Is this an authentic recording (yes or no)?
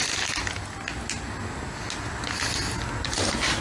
yes